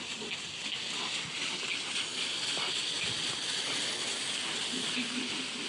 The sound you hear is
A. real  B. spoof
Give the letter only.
A